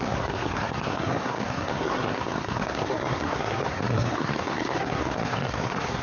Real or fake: fake